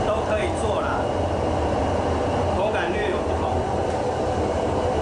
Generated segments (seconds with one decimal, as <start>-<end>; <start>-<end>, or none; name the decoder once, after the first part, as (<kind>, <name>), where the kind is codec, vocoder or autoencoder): 3.0-5.0 (vocoder, BigVGAN v2)